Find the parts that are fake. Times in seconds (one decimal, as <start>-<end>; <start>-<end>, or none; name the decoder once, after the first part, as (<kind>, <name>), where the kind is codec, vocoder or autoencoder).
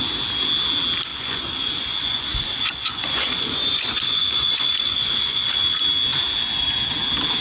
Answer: 1.1-5.5 (vocoder, Vocos)